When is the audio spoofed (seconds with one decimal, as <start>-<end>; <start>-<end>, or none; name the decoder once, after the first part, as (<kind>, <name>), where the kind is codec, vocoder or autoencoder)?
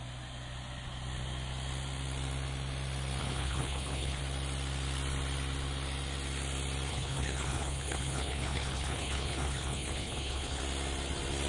3.2-4.2 (codec, HILCodec); 6.9-10.6